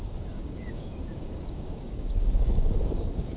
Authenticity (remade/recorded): remade